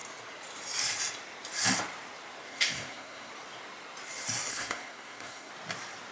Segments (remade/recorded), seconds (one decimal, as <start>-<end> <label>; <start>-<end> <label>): 0.0-2.5 recorded; 2.5-3.3 remade; 3.3-4.5 recorded; 4.5-5.5 remade; 5.5-6.1 recorded